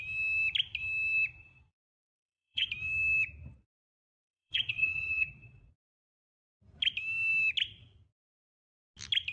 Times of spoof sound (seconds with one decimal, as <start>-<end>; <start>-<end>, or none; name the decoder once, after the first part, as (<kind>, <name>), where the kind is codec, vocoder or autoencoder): 1.4-2.7 (vocoder, Vocos); 4.0-5.7